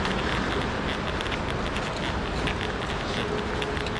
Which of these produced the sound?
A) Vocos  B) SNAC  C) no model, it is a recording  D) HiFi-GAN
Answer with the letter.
C